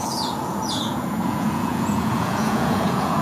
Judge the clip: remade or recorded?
remade